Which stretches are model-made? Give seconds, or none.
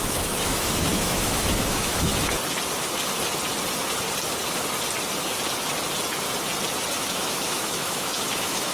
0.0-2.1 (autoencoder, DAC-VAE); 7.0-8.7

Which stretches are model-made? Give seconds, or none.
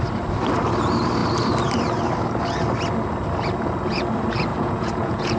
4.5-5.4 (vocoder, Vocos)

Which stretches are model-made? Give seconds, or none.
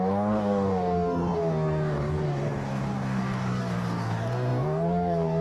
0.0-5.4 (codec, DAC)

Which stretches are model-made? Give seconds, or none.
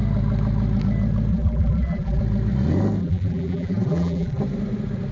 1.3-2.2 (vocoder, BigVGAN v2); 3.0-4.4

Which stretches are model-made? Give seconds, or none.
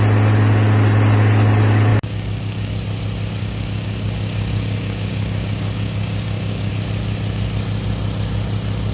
1.9-2.7 (codec, DAC); 3.4-6.7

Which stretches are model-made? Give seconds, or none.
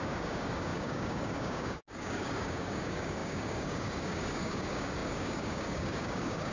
0.0-6.5 (codec, DAC)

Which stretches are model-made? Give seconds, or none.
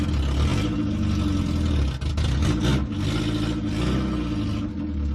none